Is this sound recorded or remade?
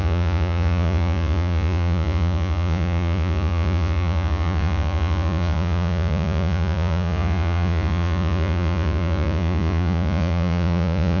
remade